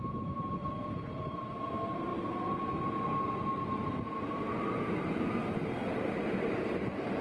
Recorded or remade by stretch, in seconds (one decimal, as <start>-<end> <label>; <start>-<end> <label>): 0.0-2.1 remade; 2.1-4.6 recorded; 4.6-5.4 remade; 5.4-6.5 recorded; 6.5-7.2 remade